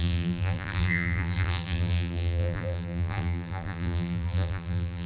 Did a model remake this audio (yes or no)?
yes